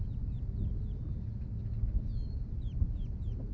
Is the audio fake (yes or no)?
no